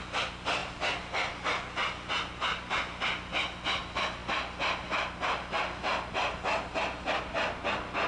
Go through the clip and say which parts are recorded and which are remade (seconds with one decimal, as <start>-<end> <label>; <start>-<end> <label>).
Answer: 0.0-8.1 recorded